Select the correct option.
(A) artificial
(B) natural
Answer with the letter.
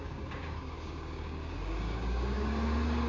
A